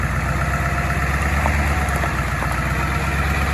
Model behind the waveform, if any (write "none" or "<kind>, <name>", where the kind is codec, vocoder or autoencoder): none